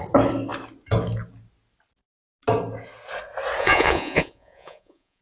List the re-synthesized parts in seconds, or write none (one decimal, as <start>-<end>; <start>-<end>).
3.6-5.2